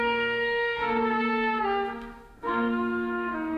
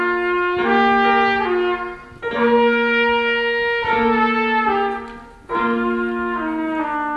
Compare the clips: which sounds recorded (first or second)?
second